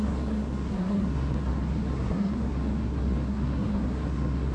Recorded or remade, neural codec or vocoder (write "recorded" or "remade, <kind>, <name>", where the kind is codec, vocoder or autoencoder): remade, codec, SNAC